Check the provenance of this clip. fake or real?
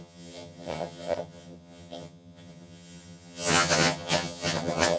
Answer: fake